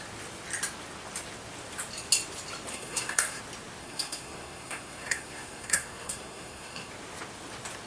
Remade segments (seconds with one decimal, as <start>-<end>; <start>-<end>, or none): 2.7-3.4; 3.8-6.9